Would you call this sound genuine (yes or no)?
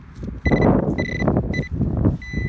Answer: yes